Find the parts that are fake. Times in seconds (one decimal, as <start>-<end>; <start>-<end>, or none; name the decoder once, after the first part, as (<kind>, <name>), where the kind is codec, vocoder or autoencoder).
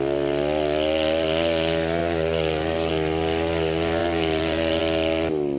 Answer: 2.0-2.9 (vocoder, BigVGAN v2); 4.0-4.8